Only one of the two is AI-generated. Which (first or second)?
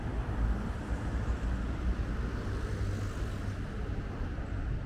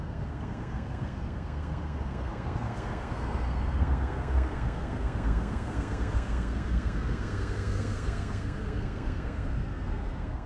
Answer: second